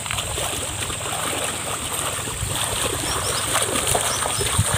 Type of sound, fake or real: real